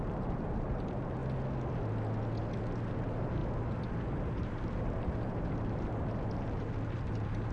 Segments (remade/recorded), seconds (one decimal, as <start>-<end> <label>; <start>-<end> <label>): 0.0-1.2 remade; 1.2-2.9 recorded; 2.9-3.4 remade; 3.4-4.4 recorded; 4.4-7.5 remade